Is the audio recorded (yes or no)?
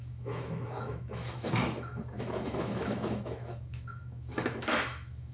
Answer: no